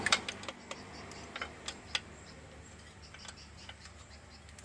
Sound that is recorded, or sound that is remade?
recorded